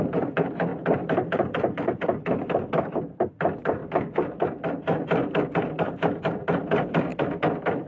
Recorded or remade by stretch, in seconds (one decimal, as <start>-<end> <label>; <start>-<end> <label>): 0.0-7.9 recorded